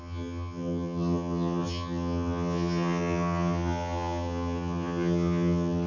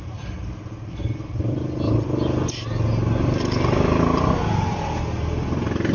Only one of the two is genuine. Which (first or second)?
second